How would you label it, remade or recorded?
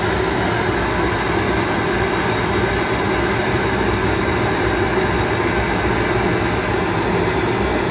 recorded